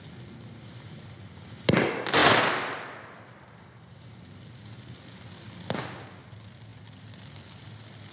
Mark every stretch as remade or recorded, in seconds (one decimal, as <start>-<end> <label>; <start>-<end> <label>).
0.0-8.1 recorded